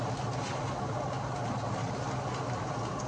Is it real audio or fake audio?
real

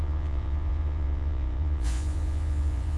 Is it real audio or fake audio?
fake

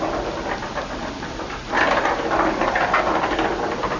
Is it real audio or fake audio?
real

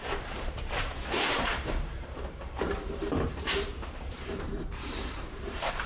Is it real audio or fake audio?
fake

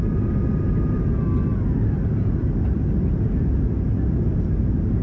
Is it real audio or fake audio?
real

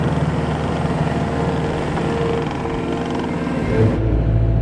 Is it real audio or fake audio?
real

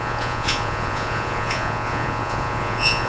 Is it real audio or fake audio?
fake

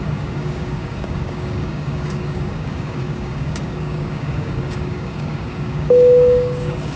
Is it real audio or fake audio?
fake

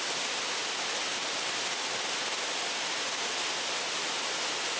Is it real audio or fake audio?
real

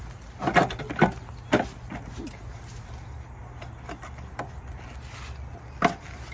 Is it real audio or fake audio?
real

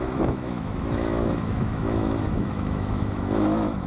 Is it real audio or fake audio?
fake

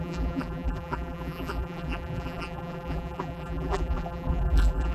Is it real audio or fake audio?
fake